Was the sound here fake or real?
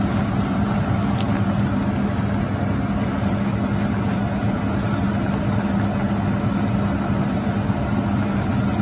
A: real